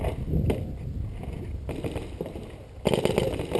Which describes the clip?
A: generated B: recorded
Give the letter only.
B